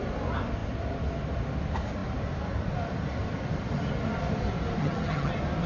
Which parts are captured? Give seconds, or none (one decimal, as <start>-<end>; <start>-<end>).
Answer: 0.0-4.8; 5.3-5.7